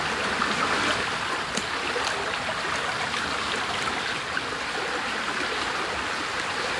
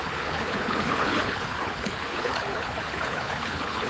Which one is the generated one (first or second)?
second